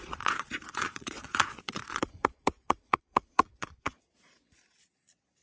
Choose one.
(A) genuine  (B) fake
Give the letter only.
B